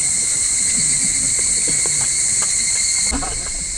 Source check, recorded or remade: recorded